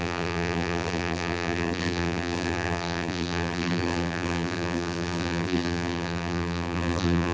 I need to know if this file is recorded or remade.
remade